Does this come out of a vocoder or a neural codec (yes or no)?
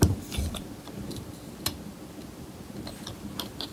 no